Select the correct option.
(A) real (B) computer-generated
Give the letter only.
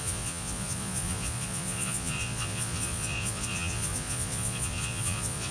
B